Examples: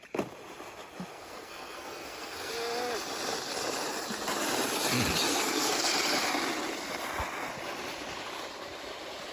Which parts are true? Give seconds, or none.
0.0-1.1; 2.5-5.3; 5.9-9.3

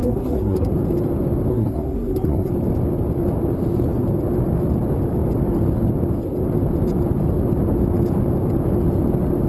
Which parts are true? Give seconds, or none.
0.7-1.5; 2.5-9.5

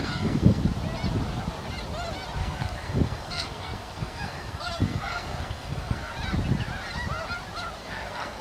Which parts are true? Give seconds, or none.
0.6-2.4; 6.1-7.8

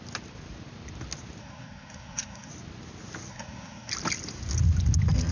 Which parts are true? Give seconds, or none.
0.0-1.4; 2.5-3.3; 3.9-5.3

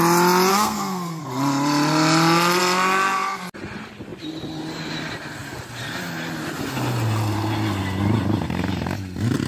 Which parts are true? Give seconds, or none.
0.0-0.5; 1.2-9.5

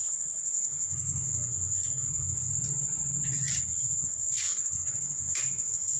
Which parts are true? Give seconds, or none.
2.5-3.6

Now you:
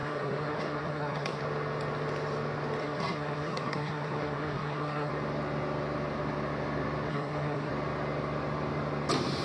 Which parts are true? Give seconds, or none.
1.4-2.8; 5.1-7.1; 7.7-9.4

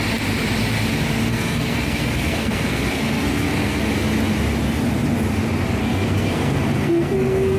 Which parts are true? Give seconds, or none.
0.0-1.3; 3.8-5.8